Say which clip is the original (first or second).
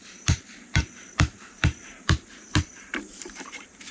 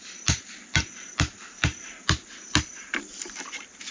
second